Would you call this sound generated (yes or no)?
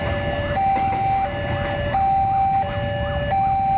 no